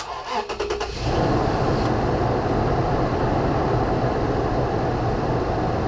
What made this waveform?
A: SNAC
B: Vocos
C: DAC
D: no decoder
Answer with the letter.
D